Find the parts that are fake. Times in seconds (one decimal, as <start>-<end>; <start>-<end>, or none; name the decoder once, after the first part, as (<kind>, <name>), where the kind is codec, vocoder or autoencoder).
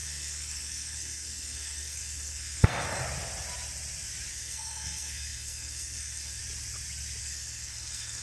0.0-3.0 (codec, SNAC); 4.3-6.4; 7.2-8.2